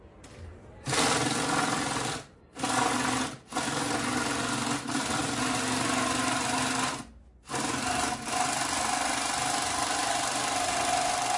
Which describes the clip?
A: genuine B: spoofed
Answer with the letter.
A